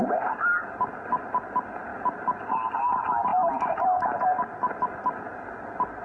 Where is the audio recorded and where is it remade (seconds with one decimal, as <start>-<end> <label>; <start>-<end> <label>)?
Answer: 0.0-1.9 recorded; 1.9-2.8 remade; 2.8-6.0 recorded